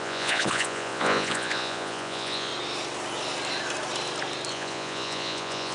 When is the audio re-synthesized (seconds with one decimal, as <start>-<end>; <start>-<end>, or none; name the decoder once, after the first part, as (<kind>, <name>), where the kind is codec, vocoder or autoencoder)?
0.0-2.5 (vocoder, Vocos); 4.5-5.7